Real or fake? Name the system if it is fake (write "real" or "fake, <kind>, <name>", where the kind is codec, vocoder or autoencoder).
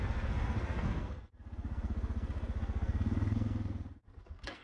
fake, codec, SNAC